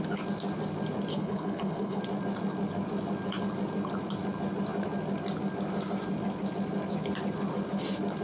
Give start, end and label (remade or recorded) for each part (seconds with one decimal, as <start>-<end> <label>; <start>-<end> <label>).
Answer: 0.0-1.1 recorded; 1.1-2.0 remade; 2.0-8.2 recorded